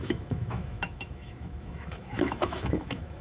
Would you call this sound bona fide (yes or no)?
no